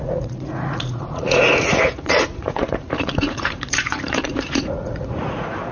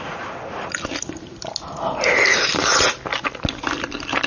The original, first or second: second